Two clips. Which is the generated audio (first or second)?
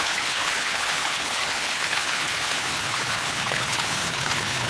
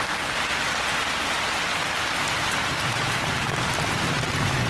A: first